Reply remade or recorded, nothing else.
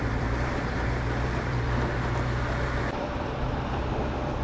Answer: remade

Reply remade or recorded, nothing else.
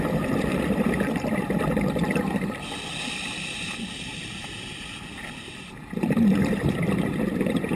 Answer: remade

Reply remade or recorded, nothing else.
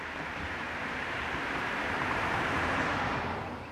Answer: remade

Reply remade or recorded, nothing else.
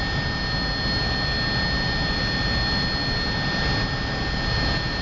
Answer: recorded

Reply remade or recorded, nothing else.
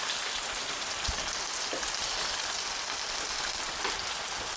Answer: recorded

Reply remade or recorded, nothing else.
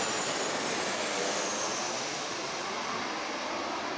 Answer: recorded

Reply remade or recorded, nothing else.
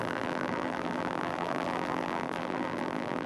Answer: remade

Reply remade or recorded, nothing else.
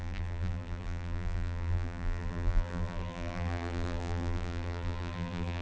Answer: remade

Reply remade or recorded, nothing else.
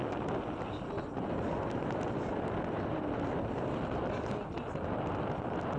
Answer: recorded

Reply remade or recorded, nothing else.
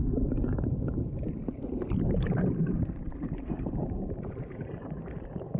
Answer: remade